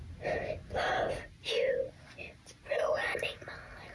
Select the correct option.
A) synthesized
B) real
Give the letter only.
B